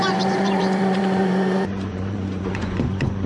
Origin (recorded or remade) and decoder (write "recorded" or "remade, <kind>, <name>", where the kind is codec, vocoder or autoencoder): remade, vocoder, Vocos